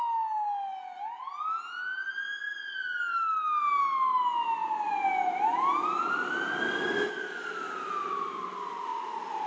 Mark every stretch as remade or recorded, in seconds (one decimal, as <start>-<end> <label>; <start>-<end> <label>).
0.0-9.5 recorded